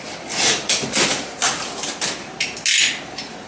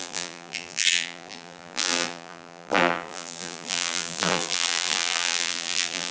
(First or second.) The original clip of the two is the first